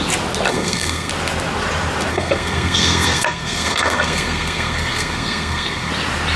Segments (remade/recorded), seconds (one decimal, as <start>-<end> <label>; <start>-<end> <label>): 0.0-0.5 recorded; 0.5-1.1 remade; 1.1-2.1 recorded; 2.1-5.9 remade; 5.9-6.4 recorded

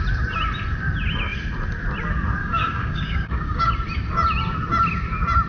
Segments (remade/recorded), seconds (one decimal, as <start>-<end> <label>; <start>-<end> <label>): 0.0-2.4 recorded; 2.4-3.7 remade; 3.7-5.5 recorded

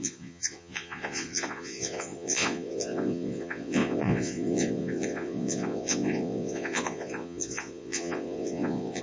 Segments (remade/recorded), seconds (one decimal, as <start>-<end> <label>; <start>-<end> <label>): 0.0-9.0 remade

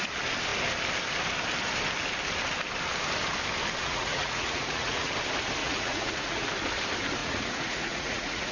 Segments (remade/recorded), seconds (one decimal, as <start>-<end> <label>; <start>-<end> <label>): 0.0-3.8 recorded; 3.8-5.1 remade; 5.1-5.6 recorded; 5.6-6.5 remade; 6.5-7.2 recorded; 7.2-8.5 remade

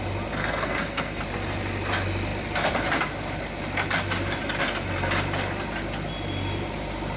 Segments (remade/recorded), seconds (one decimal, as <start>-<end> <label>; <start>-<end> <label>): 0.0-0.4 recorded; 0.4-1.2 remade; 1.2-7.2 recorded

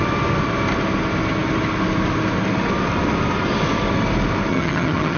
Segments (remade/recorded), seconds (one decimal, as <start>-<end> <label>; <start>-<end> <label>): 0.0-4.5 recorded; 4.5-5.2 remade